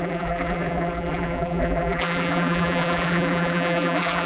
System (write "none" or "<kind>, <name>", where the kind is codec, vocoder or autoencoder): vocoder, BigVGAN v2